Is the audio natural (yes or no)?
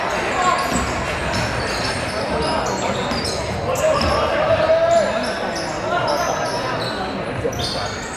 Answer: yes